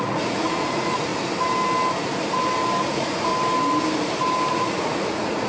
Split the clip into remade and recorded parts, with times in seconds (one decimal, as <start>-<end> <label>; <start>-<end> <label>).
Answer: 0.0-1.1 remade; 1.1-2.8 recorded; 2.8-3.3 remade; 3.3-4.5 recorded; 4.5-5.5 remade